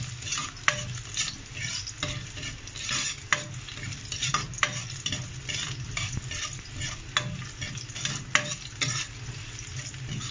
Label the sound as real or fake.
real